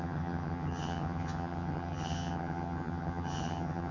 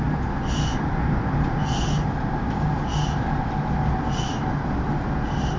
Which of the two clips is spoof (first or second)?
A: first